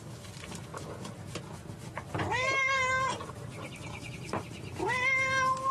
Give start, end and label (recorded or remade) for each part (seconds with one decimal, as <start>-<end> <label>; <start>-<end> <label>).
0.0-5.7 recorded